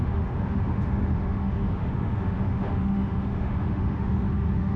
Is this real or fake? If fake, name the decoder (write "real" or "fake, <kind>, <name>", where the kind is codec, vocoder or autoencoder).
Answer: fake, autoencoder, DAC-VAE